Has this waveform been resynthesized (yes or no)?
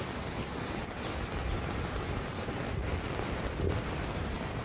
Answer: no